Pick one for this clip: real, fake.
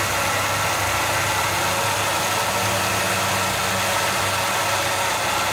real